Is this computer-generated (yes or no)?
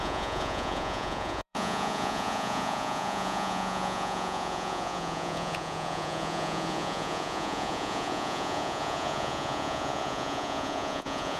yes